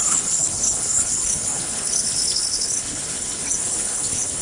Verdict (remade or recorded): remade